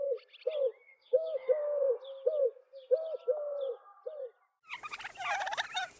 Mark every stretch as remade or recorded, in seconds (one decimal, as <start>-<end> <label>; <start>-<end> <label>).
0.0-0.8 recorded; 0.8-1.5 remade; 1.5-6.0 recorded